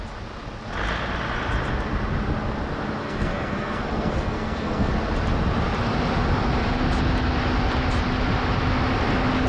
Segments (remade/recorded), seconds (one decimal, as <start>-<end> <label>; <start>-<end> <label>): 0.0-3.0 recorded; 3.0-4.9 remade; 4.9-9.5 recorded